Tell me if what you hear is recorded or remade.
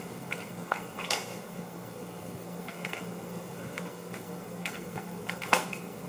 remade